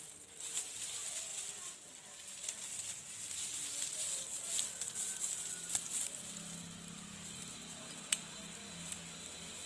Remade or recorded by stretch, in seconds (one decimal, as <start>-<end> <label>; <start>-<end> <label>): 0.0-9.7 recorded